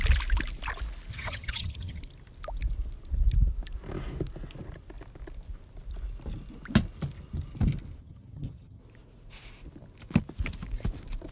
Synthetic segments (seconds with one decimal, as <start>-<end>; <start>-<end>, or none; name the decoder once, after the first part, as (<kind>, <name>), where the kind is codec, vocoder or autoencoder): 1.1-2.0 (vocoder, HiFi-GAN); 8.0-8.8

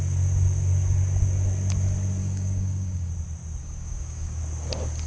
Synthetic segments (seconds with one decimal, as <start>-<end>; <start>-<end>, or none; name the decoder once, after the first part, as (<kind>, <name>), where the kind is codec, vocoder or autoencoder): 2.2-3.1 (codec, DAC); 3.6-4.4

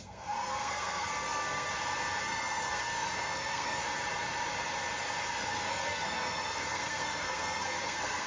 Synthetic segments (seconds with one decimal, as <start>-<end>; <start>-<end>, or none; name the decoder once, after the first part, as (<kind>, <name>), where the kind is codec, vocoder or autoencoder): 0.0-1.7 (codec, SNAC); 2.2-3.8; 5.3-8.3